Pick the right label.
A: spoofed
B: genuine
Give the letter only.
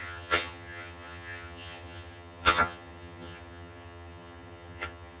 A